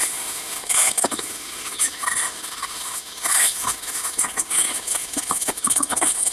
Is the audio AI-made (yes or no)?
yes